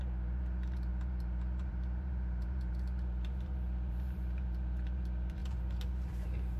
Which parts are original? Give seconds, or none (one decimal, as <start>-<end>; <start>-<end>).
none